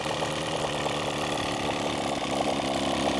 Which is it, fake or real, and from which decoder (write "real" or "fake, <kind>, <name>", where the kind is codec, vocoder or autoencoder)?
real